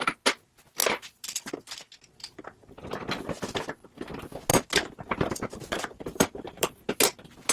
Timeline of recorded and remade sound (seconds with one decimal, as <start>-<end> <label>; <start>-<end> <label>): 0.0-0.8 recorded; 0.8-1.5 remade; 1.5-4.5 recorded; 4.5-6.9 remade; 6.9-7.5 recorded